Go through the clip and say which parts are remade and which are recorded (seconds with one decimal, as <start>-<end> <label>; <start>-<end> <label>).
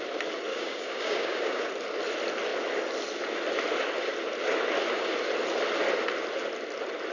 0.0-0.5 recorded; 0.5-1.7 remade; 1.7-7.1 recorded